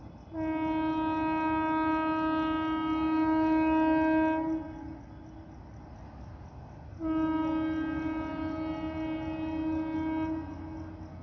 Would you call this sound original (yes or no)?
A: yes